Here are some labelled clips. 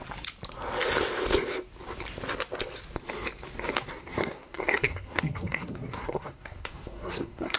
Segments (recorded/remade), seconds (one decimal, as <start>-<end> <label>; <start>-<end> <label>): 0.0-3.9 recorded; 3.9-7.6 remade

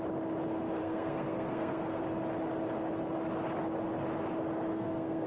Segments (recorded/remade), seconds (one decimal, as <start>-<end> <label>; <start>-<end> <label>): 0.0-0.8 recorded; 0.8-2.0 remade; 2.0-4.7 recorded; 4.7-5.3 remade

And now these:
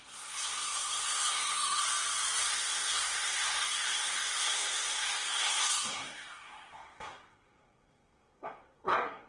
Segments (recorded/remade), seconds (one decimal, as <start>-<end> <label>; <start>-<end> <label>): 0.0-1.8 remade; 1.8-2.4 recorded; 2.4-9.3 remade